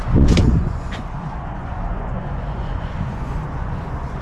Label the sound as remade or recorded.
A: remade